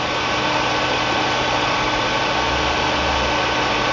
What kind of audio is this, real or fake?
real